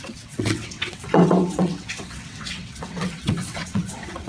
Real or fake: fake